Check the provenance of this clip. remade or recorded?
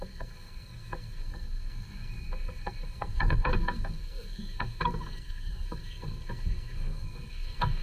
remade